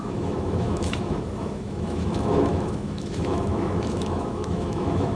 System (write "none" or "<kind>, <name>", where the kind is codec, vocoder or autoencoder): autoencoder, DAC-VAE